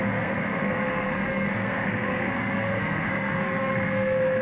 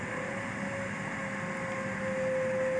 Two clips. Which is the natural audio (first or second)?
second